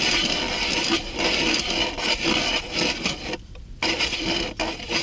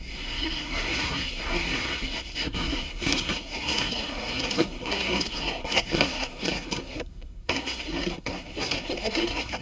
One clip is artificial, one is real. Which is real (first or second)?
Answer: first